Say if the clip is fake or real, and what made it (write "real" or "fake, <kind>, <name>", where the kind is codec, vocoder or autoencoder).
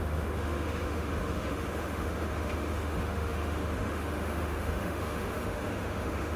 fake, autoencoder, DAC-VAE